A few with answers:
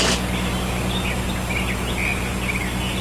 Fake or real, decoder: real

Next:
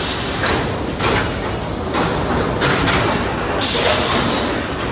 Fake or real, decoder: real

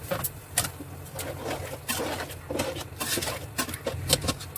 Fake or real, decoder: real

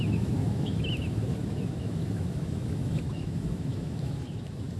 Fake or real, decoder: fake, autoencoder, DAC-VAE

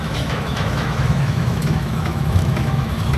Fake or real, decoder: fake, autoencoder, DAC-VAE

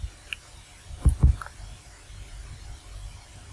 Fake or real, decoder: real